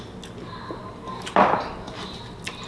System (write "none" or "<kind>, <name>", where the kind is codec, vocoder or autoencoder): none